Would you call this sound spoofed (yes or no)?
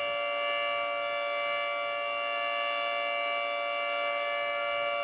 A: no